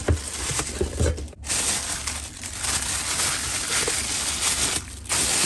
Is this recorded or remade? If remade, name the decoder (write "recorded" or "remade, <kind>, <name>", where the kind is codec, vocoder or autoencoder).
recorded